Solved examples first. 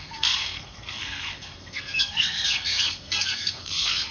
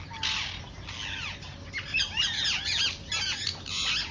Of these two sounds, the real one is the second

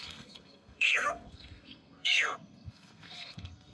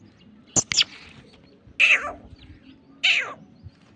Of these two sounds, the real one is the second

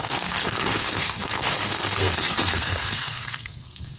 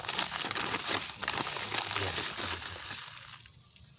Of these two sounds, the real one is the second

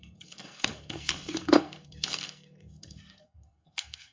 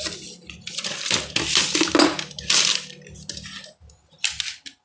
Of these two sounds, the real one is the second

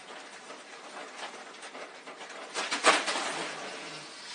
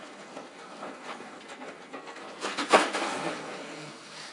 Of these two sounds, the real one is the first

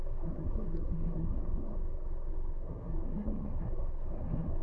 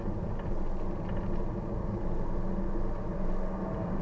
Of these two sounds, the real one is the second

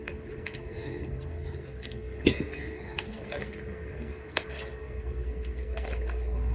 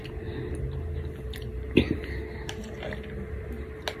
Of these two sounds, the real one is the second